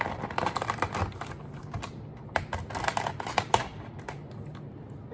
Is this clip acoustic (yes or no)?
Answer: yes